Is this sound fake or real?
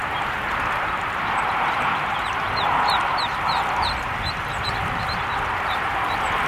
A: fake